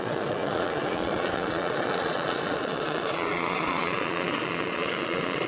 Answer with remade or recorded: remade